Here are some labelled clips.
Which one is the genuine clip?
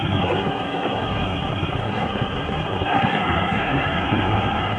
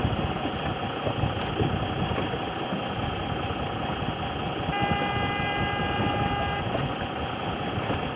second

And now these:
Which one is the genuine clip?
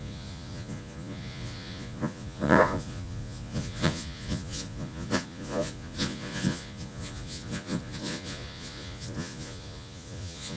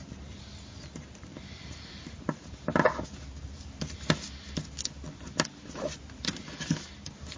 second